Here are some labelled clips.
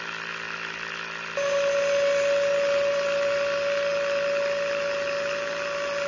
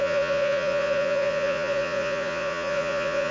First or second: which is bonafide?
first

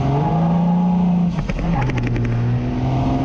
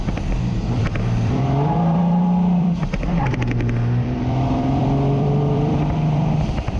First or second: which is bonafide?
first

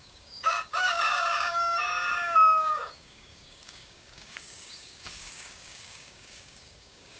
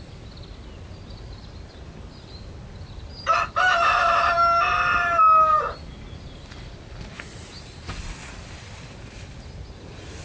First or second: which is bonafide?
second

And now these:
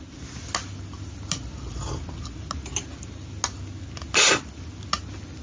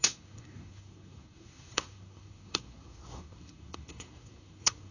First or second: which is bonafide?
first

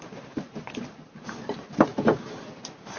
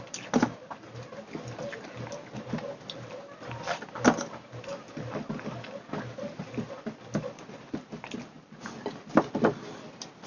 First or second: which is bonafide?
second